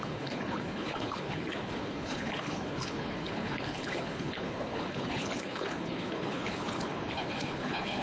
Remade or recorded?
remade